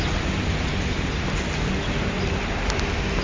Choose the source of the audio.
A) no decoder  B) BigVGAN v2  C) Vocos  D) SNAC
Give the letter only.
A